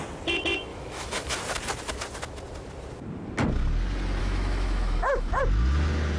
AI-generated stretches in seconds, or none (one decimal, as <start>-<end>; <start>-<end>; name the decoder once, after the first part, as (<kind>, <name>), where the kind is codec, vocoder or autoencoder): 0.7-1.3 (autoencoder, DAC-VAE); 4.2-5.4